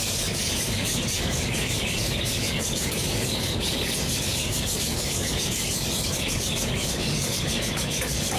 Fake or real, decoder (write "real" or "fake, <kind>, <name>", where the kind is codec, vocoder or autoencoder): fake, codec, DAC